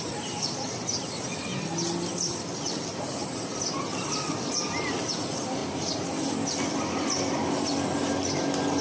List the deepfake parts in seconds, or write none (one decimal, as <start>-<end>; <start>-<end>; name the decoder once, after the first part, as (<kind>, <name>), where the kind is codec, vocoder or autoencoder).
0.0-1.5 (vocoder, BigVGAN v2); 2.6-5.6